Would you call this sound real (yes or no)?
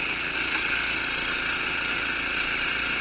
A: yes